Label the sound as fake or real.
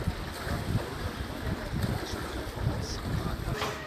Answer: real